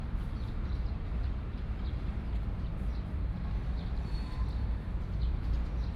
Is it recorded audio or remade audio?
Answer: remade